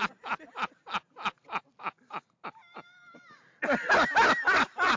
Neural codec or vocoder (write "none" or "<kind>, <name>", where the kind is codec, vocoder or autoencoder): none